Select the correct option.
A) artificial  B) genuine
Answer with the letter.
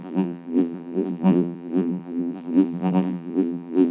A